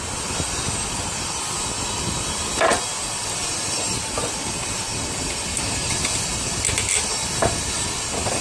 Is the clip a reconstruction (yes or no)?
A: no